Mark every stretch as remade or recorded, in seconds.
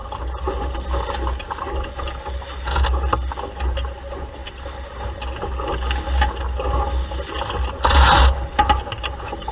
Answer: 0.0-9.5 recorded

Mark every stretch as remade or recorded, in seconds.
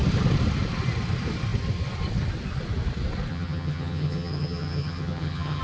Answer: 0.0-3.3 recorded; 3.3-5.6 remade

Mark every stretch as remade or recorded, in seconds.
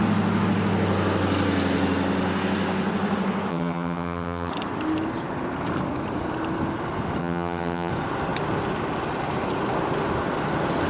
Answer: 0.0-3.5 recorded; 3.5-4.5 remade; 4.5-7.2 recorded; 7.2-7.9 remade; 7.9-10.9 recorded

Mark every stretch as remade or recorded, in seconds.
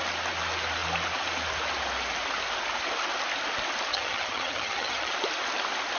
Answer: 0.0-3.9 recorded; 3.9-5.1 remade; 5.1-6.0 recorded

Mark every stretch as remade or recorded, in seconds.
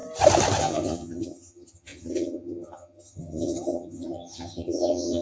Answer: 0.0-0.6 recorded; 0.6-5.2 remade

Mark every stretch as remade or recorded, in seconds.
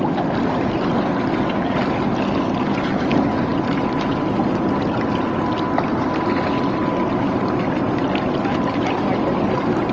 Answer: 0.0-9.9 recorded